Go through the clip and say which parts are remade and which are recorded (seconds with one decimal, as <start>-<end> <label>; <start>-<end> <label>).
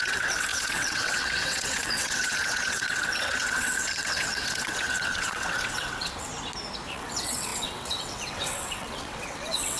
0.0-6.3 remade; 6.3-6.9 recorded; 6.9-9.8 remade